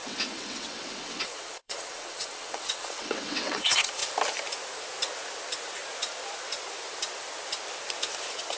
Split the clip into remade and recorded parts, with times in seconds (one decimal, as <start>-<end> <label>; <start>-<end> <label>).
0.0-4.0 remade; 4.0-8.6 recorded